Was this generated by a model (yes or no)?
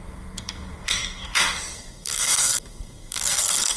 yes